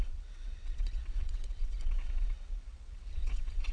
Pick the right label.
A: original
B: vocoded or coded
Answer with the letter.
B